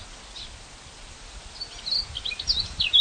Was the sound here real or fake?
real